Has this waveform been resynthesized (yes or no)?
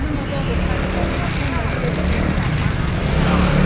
no